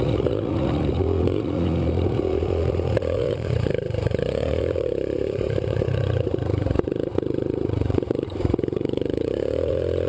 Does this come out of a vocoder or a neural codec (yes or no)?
yes